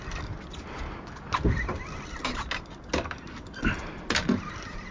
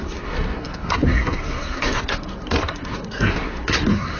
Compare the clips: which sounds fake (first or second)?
second